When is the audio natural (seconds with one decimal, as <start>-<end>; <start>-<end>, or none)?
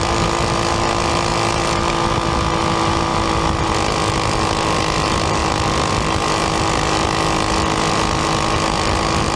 0.0-9.4